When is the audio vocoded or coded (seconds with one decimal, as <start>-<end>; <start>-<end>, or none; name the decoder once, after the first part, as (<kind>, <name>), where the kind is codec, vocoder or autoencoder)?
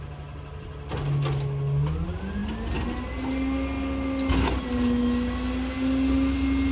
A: none